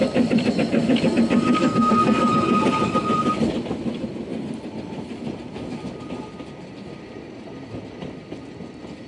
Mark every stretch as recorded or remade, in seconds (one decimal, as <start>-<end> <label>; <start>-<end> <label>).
0.0-1.6 recorded; 1.6-2.3 remade; 2.3-9.1 recorded